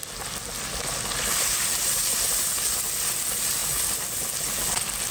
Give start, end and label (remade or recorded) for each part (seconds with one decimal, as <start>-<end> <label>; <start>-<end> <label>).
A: 0.0-5.1 recorded